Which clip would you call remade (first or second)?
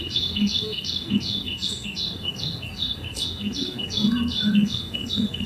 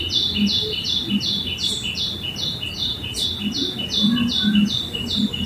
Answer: first